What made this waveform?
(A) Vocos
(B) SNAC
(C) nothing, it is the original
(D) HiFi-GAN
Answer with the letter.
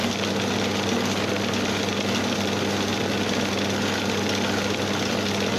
C